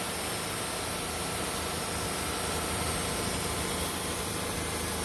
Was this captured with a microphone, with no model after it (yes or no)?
yes